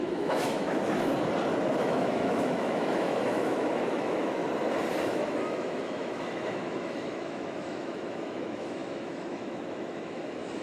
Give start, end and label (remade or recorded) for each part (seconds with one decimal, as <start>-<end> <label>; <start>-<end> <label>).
0.0-1.1 remade; 1.1-1.8 recorded; 1.8-4.4 remade; 4.4-5.0 recorded; 5.0-10.6 remade